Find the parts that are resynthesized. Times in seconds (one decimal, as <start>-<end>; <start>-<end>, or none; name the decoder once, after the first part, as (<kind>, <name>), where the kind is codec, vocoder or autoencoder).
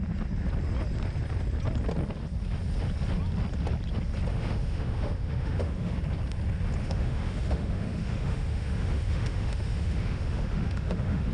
4.3-6.0 (autoencoder, DAC-VAE); 6.8-11.3